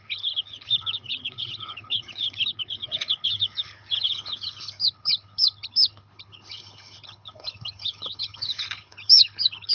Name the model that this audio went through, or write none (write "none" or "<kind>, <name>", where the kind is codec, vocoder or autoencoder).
codec, HILCodec